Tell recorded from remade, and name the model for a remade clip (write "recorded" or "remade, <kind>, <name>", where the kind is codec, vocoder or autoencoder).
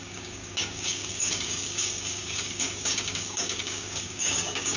remade, codec, DAC